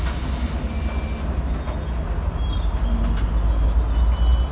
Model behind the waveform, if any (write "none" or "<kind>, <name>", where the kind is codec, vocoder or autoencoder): none